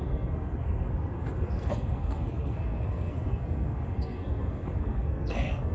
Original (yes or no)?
no